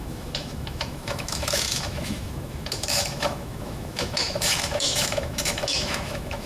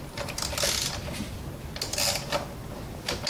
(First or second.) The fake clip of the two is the first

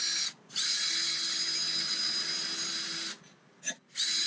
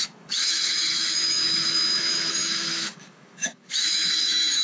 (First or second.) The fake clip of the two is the second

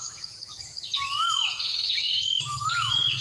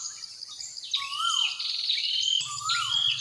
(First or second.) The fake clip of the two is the first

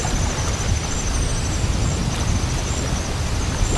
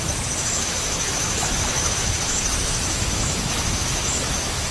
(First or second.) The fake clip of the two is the second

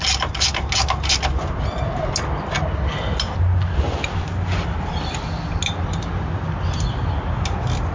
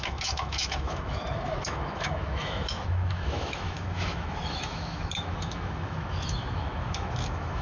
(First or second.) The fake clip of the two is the second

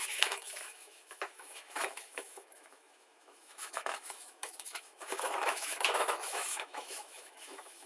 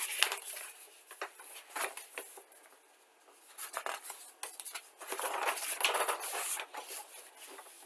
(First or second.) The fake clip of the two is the first